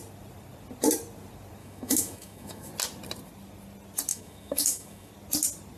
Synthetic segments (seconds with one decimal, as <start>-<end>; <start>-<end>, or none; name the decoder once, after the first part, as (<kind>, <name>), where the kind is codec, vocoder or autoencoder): 1.6-2.7 (autoencoder, DAC-VAE); 4.1-5.1